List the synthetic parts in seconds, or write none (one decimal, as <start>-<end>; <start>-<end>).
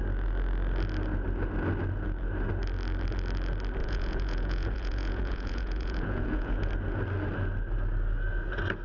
3.8-6.7